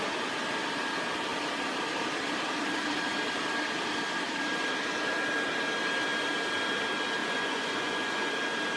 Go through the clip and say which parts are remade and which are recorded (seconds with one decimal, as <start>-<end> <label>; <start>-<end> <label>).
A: 0.0-7.2 recorded; 7.2-8.3 remade; 8.3-8.8 recorded